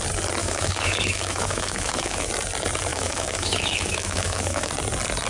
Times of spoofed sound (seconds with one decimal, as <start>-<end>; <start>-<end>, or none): 0.4-2.3; 2.9-4.7